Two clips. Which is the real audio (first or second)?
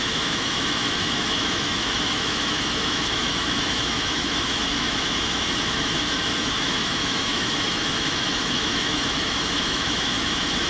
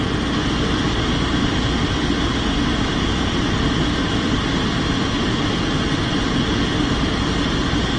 second